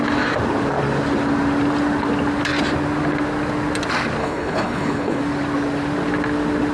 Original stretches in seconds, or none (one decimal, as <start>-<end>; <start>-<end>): 0.0-4.2; 5.2-6.7